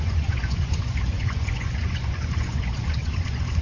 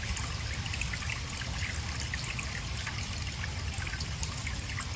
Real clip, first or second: second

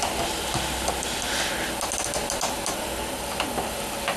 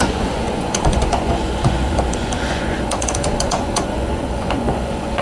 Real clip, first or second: first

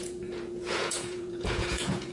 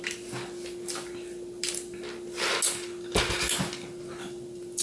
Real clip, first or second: second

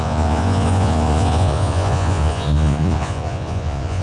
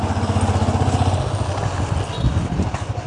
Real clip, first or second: second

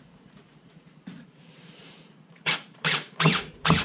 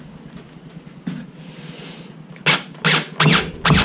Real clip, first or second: second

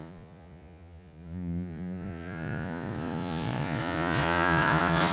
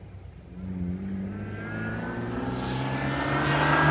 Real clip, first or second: second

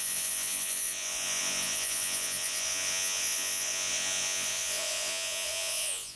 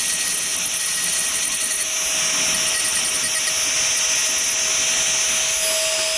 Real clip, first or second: second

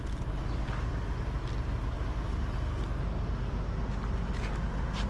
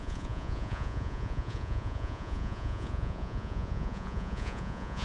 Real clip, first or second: first